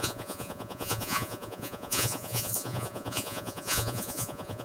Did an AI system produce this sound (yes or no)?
yes